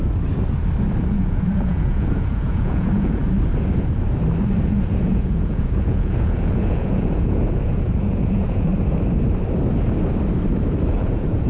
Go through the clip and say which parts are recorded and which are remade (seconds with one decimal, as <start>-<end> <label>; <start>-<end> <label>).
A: 0.0-1.1 recorded; 1.1-3.2 remade; 3.2-4.6 recorded; 4.6-8.7 remade; 8.7-10.9 recorded; 10.9-11.5 remade